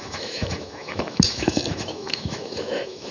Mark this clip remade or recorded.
remade